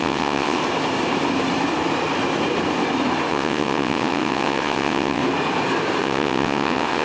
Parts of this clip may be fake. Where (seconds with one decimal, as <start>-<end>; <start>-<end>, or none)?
0.0-0.6; 3.3-5.2; 6.0-7.0